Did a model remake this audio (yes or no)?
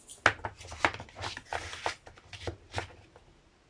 no